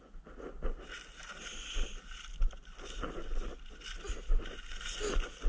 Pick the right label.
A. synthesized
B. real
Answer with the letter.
B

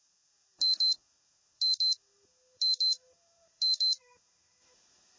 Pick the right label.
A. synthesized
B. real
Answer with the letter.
A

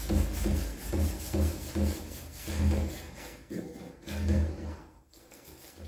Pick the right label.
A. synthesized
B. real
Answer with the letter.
A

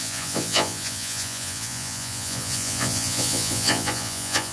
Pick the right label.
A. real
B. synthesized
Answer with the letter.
B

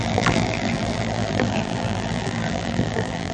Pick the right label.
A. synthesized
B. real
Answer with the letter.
A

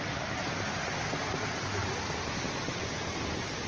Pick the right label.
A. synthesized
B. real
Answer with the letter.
B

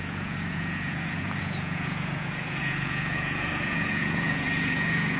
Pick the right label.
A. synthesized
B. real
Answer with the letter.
A